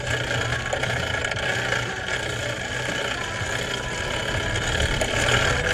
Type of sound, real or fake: real